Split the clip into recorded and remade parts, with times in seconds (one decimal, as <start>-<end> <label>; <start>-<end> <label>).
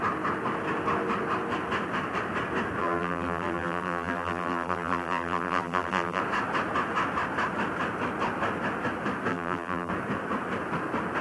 0.0-2.8 recorded; 2.8-6.2 remade; 6.2-9.3 recorded; 9.3-9.9 remade; 9.9-11.2 recorded